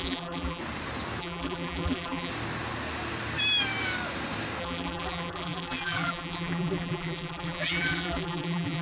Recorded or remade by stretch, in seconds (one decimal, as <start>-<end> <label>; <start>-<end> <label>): 0.0-0.6 remade; 0.6-1.2 recorded; 1.2-2.3 remade; 2.3-4.6 recorded; 4.6-8.8 remade